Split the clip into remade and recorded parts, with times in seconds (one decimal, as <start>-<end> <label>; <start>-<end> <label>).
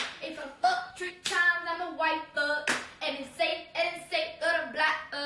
0.0-0.4 recorded; 0.4-1.1 remade; 1.1-5.3 recorded